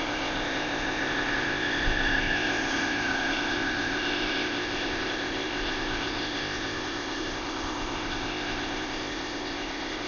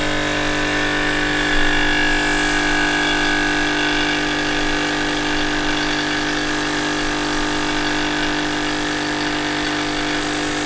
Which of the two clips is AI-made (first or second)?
first